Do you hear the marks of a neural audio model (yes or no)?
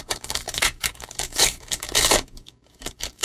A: yes